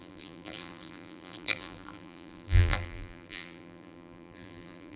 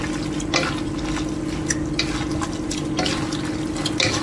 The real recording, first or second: second